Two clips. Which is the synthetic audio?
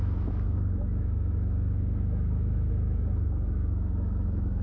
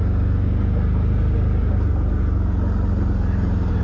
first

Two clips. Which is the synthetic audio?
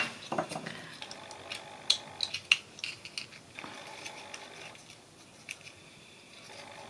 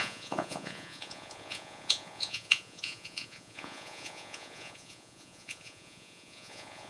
second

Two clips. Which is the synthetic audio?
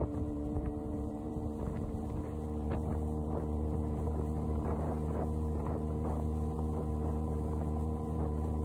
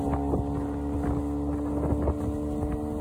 first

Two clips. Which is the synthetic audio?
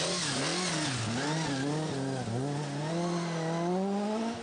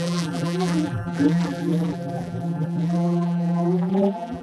second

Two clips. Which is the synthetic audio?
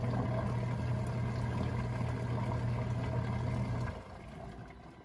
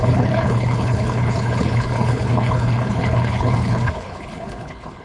second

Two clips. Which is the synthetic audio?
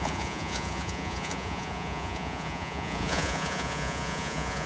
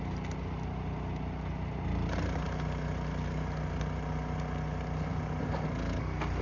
first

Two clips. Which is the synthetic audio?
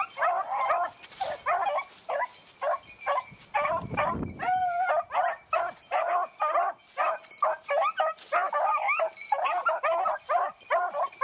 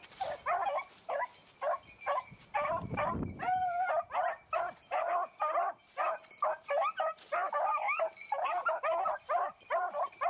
second